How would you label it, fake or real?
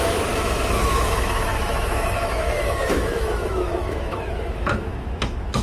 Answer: fake